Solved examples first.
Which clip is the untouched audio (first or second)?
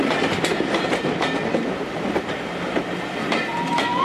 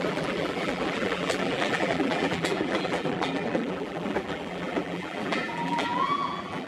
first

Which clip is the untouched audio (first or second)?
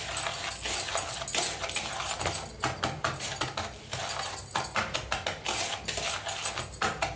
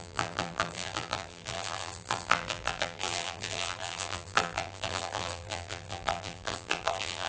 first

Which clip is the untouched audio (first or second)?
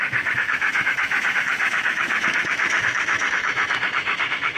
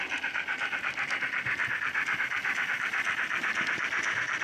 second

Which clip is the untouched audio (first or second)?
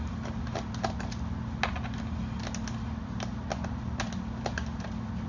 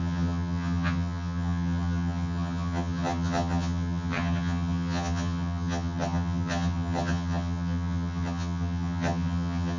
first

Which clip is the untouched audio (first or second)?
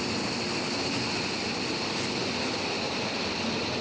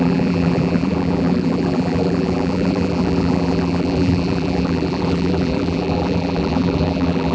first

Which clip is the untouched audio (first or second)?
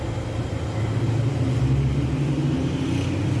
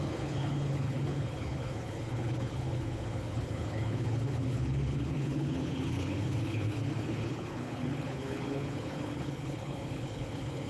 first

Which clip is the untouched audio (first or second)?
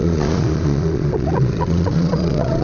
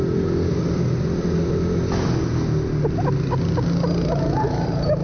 second